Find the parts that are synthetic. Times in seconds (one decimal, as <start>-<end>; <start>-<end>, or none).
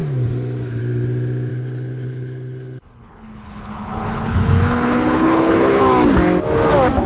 1.5-5.8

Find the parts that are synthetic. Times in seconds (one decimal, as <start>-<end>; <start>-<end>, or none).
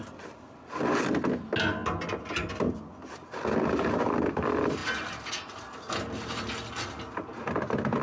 none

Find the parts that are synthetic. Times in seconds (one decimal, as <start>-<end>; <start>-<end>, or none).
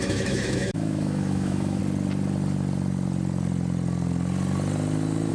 0.0-1.8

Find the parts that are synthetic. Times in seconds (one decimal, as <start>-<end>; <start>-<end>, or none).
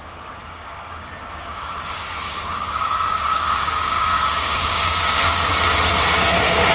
0.4-1.1; 1.5-5.5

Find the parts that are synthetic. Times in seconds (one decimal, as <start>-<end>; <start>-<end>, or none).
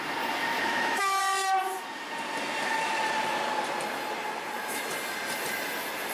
0.6-1.2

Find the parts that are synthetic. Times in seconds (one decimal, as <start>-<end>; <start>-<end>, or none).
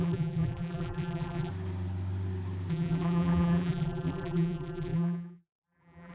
0.0-1.5; 2.7-6.1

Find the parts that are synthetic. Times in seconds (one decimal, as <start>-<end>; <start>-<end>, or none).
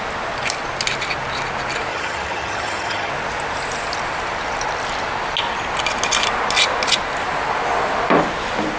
1.9-3.1